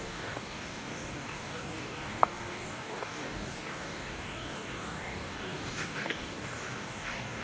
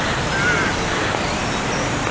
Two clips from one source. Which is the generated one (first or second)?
first